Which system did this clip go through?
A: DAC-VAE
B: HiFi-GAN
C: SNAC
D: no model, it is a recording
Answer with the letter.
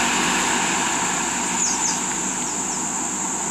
D